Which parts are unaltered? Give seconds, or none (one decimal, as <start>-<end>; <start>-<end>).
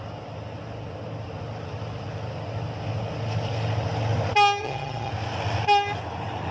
0.0-4.6; 5.1-6.5